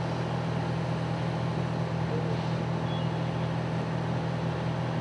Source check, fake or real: real